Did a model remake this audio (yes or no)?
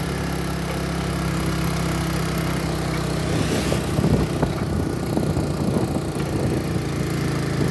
no